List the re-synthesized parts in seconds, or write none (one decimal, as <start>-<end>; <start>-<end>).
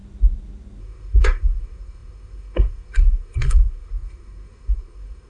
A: 0.8-5.3